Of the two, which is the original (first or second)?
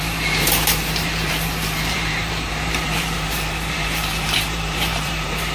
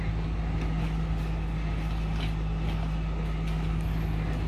second